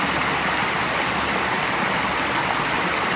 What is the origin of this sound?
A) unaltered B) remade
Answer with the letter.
A